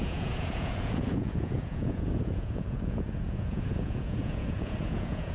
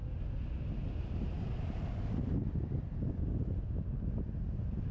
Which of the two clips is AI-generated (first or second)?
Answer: first